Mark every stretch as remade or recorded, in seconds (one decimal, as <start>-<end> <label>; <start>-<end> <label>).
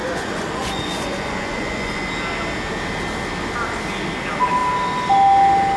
0.0-2.1 remade; 2.1-5.8 recorded